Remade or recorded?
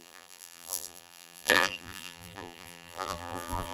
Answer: remade